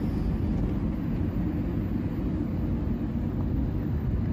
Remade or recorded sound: recorded